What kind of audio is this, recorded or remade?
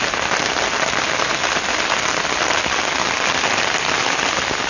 recorded